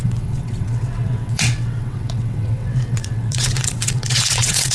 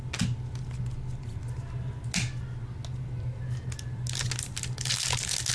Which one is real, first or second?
second